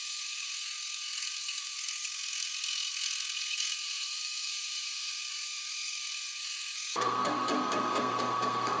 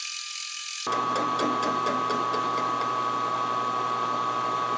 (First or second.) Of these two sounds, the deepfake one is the first